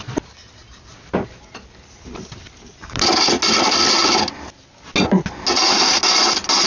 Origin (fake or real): real